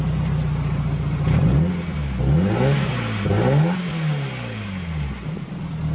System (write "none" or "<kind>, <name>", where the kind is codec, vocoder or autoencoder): none